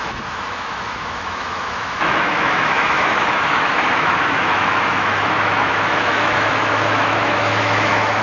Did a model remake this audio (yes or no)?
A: yes